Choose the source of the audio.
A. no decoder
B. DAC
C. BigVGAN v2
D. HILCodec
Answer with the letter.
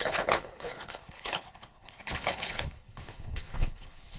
D